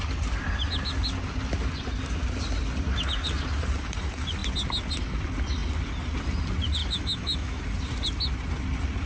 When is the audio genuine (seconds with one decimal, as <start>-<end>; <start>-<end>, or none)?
0.0-6.8; 7.6-9.1